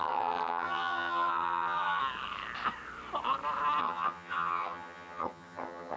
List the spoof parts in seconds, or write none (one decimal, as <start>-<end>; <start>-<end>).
0.0-2.0; 3.8-6.0